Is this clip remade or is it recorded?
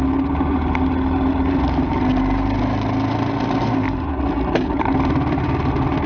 recorded